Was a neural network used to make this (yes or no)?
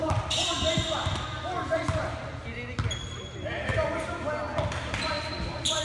no